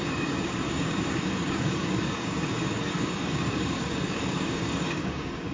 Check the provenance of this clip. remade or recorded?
remade